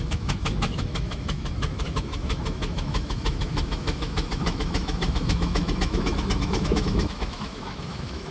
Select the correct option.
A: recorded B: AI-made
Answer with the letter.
B